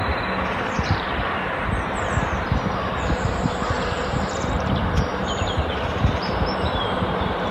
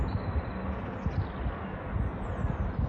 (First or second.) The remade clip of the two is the first